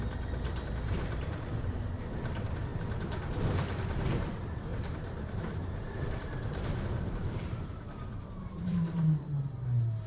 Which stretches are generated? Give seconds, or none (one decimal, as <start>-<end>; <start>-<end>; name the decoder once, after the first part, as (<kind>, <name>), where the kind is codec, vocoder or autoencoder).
4.7-9.3 (vocoder, BigVGAN v2)